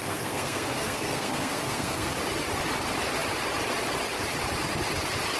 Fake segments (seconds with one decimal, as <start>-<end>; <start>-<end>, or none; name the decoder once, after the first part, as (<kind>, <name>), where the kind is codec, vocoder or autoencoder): 0.0-2.1 (codec, SNAC)